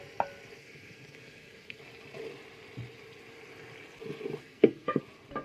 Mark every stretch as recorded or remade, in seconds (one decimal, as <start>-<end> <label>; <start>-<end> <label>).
0.0-0.6 recorded; 0.6-1.8 remade; 1.8-4.4 recorded; 4.4-5.0 remade; 5.0-5.4 recorded